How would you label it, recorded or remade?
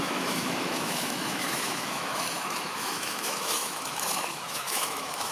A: remade